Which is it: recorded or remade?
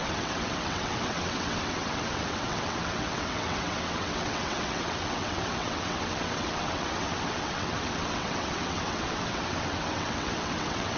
remade